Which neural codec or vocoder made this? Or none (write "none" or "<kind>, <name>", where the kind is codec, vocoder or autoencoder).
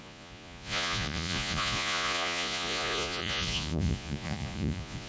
vocoder, Vocos